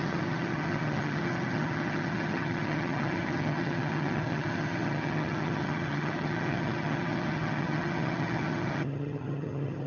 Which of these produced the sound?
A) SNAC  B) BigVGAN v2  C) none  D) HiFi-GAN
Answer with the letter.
D